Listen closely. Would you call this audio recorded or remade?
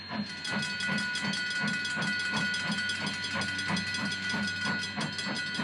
recorded